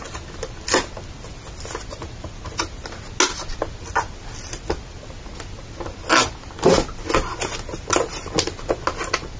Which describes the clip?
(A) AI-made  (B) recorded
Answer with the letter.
B